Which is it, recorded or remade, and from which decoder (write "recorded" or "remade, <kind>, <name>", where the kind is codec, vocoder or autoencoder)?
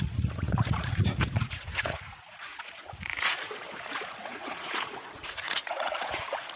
remade, vocoder, Vocos